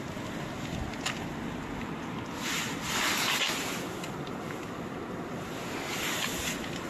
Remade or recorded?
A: recorded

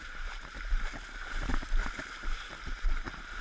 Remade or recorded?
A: recorded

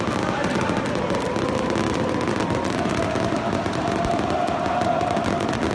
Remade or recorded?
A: recorded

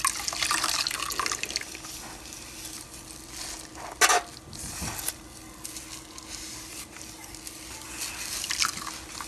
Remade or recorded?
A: recorded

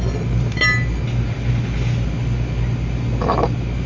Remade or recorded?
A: recorded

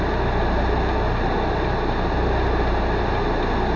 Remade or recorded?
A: recorded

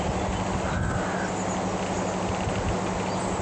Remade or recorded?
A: recorded